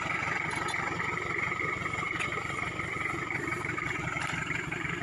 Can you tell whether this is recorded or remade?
remade